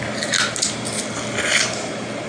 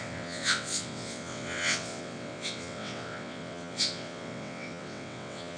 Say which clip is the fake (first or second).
second